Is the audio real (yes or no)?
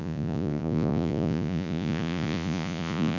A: no